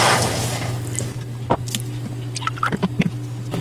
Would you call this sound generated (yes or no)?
no